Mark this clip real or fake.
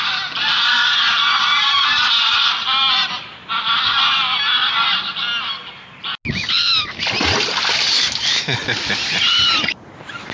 real